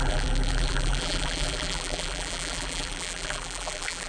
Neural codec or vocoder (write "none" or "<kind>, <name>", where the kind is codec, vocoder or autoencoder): vocoder, BigVGAN v2